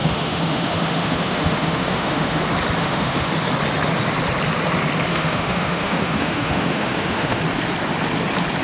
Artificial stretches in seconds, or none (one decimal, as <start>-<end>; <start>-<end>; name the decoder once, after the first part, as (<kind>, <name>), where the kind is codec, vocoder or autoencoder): 0.0-2.4 (autoencoder, DAC-VAE); 2.8-3.3; 5.1-7.4